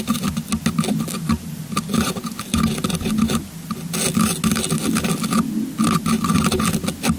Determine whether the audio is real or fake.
real